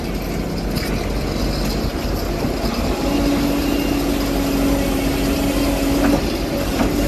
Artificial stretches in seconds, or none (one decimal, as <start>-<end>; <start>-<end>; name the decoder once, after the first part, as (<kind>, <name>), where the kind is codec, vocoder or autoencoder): none